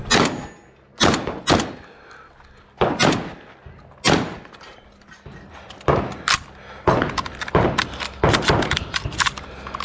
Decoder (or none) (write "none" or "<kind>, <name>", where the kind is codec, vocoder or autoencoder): none